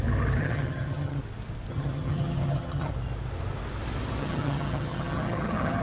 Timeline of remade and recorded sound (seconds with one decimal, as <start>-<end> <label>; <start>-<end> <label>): 0.0-0.4 recorded; 0.4-1.2 remade; 1.2-1.7 recorded; 1.7-2.9 remade; 2.9-4.2 recorded; 4.2-5.8 remade